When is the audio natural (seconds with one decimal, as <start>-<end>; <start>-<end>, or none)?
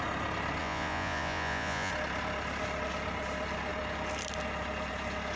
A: 0.0-0.6; 1.9-5.4